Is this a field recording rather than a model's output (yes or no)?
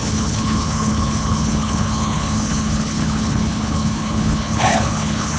no